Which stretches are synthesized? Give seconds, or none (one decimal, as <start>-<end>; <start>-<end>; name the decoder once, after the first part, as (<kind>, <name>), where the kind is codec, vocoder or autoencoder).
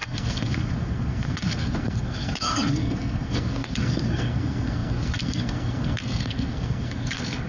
0.0-7.5 (codec, SNAC)